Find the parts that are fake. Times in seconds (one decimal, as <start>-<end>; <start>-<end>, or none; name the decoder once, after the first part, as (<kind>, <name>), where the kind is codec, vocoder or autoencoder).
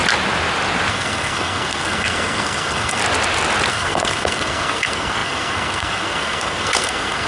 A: 0.9-3.0 (codec, SNAC); 3.7-7.3